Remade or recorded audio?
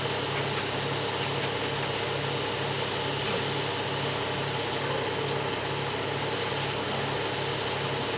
recorded